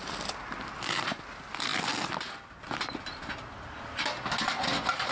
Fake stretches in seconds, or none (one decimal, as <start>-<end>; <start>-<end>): none